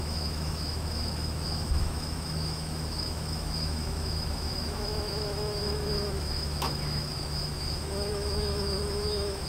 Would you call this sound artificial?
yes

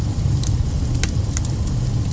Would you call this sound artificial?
no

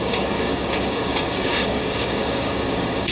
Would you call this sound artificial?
yes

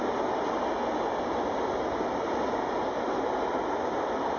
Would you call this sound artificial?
no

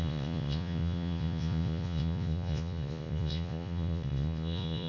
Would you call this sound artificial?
yes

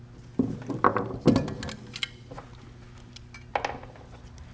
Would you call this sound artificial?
no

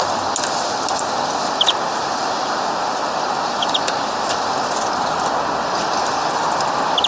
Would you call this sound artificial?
no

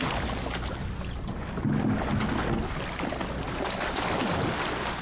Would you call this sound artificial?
no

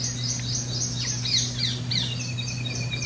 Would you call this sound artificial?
no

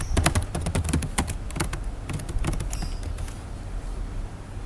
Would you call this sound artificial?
no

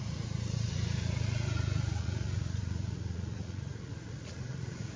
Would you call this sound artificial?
yes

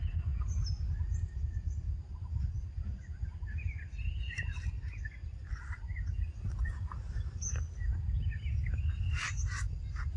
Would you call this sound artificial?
no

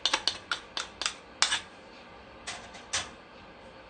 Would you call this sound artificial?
no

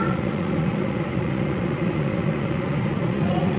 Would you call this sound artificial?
yes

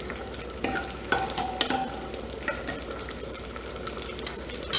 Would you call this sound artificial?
no